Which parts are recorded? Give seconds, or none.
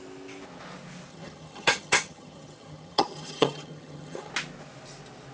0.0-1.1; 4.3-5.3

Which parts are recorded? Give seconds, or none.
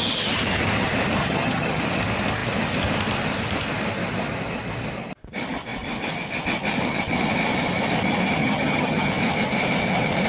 0.0-1.2; 1.8-8.4; 9.1-10.3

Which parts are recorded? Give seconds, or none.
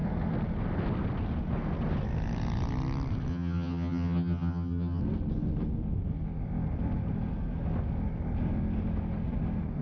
0.0-3.3; 5.0-9.8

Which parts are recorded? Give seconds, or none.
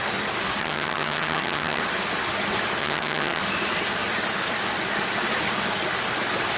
0.0-0.6; 1.8-2.8; 3.4-6.6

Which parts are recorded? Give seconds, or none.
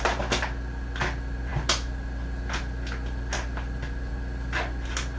0.0-5.2